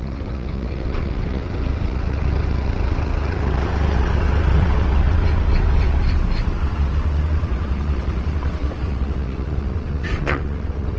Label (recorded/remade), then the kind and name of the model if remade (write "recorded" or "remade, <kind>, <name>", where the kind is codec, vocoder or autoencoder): remade, vocoder, WaveNeXt